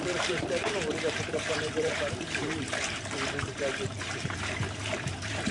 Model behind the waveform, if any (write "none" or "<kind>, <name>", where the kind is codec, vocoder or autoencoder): vocoder, BigVGAN v2